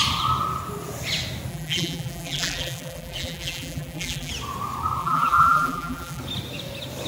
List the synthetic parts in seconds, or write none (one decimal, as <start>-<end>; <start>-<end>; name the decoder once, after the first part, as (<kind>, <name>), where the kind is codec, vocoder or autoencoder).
1.5-4.3 (vocoder, BigVGAN v2); 5.0-6.2